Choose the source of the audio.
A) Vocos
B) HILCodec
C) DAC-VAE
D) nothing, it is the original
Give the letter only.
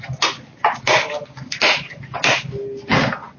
D